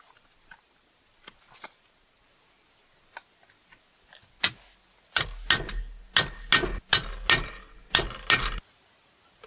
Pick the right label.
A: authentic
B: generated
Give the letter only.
A